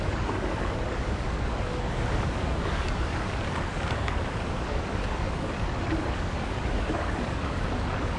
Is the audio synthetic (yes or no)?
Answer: yes